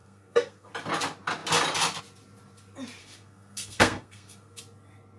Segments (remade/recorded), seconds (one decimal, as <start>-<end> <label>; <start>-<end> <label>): 0.0-0.7 remade; 0.7-3.0 recorded; 3.0-4.6 remade; 4.6-5.2 recorded